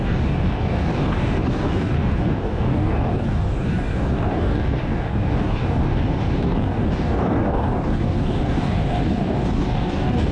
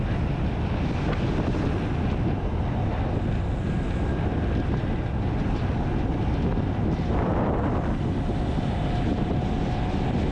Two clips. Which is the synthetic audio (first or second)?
first